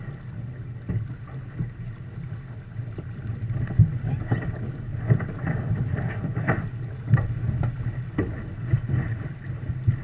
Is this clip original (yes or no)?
yes